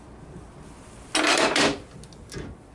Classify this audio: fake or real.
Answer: real